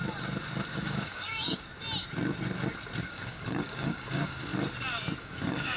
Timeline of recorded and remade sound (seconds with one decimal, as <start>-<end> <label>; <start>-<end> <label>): 0.0-0.7 recorded; 0.7-1.7 remade; 1.7-3.1 recorded; 3.1-4.5 remade; 4.5-5.2 recorded; 5.2-5.8 remade